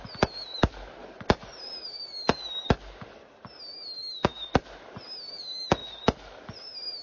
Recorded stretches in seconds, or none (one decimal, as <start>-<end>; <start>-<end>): 0.0-1.0; 2.7-5.8; 6.4-7.0

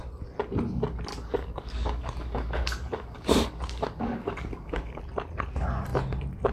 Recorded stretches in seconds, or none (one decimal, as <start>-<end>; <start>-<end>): 0.0-1.1; 5.0-6.5

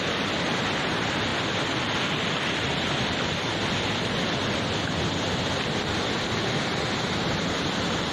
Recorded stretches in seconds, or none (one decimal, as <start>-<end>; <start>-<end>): 0.0-8.1